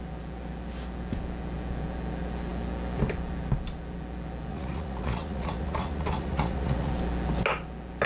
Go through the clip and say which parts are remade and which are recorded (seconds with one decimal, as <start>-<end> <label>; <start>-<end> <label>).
0.0-4.5 recorded; 4.5-6.9 remade; 6.9-8.1 recorded